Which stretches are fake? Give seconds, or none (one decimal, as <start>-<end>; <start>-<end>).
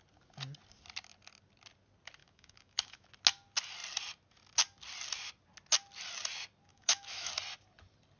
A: 2.2-3.1; 6.7-7.3